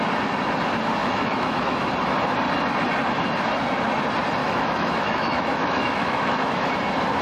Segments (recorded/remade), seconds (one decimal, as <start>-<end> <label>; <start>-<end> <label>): 0.0-1.0 recorded; 1.0-1.9 remade; 1.9-4.4 recorded; 4.4-6.7 remade; 6.7-7.2 recorded

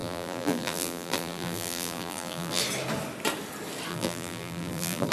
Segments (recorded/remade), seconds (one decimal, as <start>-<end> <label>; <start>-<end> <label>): 0.0-2.6 remade; 2.6-3.9 recorded; 3.9-5.1 remade

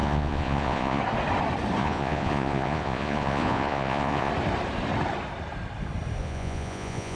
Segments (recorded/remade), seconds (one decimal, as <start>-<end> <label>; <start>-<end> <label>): 0.0-1.0 remade; 1.0-1.8 recorded; 1.8-4.3 remade; 4.3-6.2 recorded; 6.2-7.2 remade

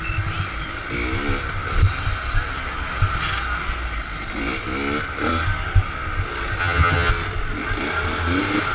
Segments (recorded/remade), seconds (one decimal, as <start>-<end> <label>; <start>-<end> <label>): 0.0-6.6 recorded; 6.6-7.1 remade; 7.1-8.7 recorded

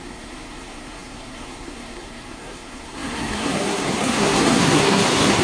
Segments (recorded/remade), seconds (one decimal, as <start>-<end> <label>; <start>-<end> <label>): 0.0-5.4 remade